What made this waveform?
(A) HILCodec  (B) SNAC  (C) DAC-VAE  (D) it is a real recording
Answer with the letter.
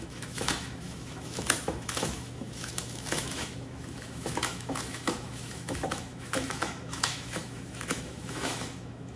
C